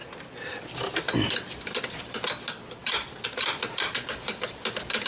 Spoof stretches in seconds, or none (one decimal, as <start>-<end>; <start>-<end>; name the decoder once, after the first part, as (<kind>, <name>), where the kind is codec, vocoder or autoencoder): 2.8-4.6 (vocoder, BigVGAN v2)